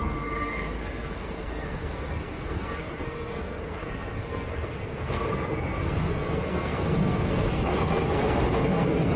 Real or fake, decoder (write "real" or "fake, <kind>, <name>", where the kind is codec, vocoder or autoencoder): fake, codec, SNAC